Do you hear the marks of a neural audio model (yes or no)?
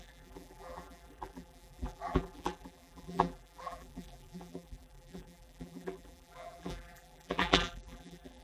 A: yes